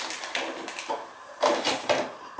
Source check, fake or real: real